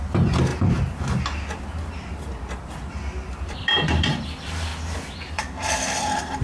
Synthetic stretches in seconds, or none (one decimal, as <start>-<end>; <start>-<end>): 0.0-0.5; 3.6-4.7; 5.3-6.4